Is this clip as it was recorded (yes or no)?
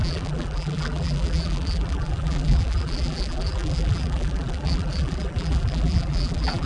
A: no